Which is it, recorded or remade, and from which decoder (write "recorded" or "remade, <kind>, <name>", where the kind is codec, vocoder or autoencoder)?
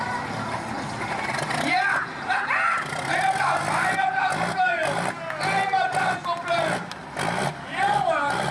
recorded